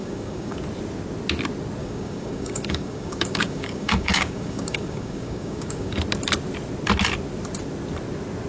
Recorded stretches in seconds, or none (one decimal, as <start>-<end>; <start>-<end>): 0.6-1.8; 6.0-8.5